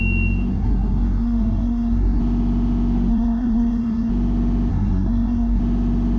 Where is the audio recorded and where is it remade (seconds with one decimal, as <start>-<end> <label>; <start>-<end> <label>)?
0.0-0.5 recorded; 0.5-2.2 remade; 2.2-3.1 recorded; 3.1-4.1 remade; 4.1-4.7 recorded; 4.7-5.6 remade; 5.6-6.2 recorded